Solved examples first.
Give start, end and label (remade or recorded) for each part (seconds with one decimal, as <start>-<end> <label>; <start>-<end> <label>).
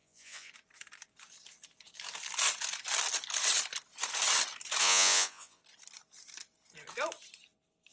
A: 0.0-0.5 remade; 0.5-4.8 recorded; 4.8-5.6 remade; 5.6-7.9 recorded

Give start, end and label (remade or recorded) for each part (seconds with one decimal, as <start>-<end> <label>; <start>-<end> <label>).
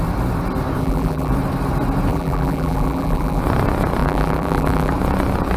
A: 0.0-0.8 recorded; 0.8-1.3 remade; 1.3-2.1 recorded; 2.1-3.4 remade; 3.4-4.0 recorded; 4.0-4.9 remade; 4.9-5.6 recorded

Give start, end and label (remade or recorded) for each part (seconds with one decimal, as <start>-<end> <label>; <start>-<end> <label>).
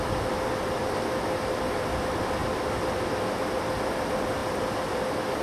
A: 0.0-5.4 recorded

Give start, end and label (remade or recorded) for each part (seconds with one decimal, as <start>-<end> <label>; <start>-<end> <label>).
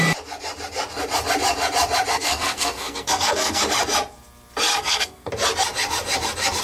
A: 0.0-2.1 recorded; 2.1-3.6 remade; 3.6-4.7 recorded; 4.7-5.3 remade; 5.3-6.6 recorded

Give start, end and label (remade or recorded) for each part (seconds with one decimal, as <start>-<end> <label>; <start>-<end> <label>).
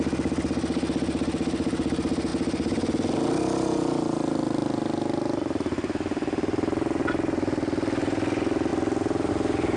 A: 0.0-9.8 recorded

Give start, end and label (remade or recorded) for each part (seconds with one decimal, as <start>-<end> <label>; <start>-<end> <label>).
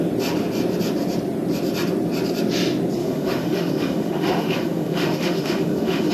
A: 0.0-3.0 recorded; 3.0-6.1 remade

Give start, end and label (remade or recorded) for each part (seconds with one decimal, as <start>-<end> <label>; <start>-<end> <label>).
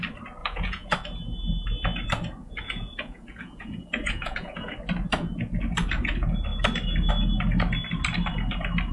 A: 0.0-0.4 recorded; 0.4-0.9 remade; 0.9-2.4 recorded; 2.4-4.7 remade; 4.7-8.9 recorded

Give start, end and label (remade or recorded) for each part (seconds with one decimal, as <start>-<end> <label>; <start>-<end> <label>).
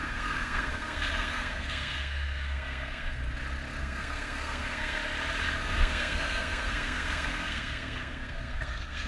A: 0.0-3.2 remade; 3.2-3.8 recorded; 3.8-5.0 remade; 5.0-5.6 recorded; 5.6-9.1 remade